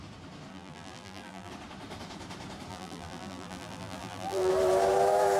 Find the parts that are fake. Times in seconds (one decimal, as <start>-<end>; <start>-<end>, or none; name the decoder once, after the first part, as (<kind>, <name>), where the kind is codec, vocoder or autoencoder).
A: 0.5-1.5 (vocoder, BigVGAN v2); 2.7-4.5